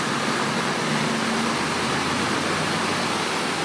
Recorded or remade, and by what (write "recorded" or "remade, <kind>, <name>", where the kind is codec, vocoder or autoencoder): recorded